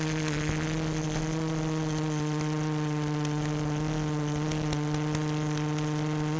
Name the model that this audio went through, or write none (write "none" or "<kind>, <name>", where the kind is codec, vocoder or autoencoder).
none